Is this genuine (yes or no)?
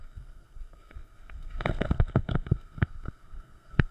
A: no